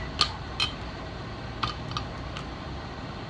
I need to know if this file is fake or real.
real